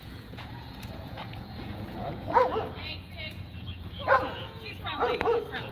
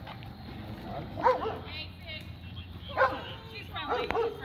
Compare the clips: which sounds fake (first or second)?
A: first